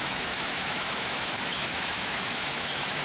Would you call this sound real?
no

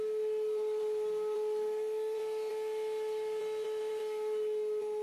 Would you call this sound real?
yes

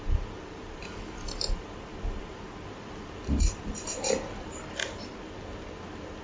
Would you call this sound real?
yes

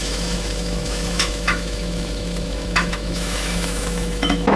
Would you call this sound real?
no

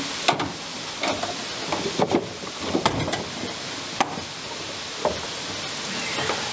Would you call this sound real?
yes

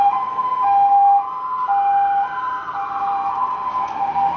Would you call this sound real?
yes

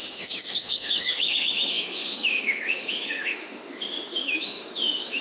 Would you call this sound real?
no